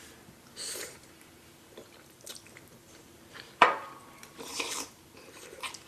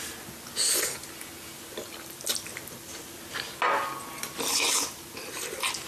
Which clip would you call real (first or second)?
second